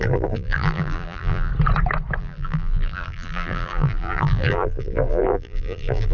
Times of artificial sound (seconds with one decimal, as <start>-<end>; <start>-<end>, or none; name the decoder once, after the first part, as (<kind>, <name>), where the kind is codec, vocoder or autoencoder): 0.0-1.5 (vocoder, BigVGAN v2); 2.2-6.1